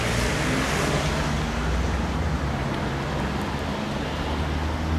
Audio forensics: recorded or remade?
recorded